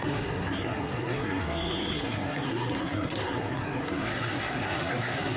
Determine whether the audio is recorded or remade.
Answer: remade